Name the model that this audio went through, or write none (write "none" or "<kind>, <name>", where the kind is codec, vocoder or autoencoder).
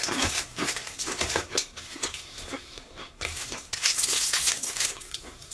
codec, SNAC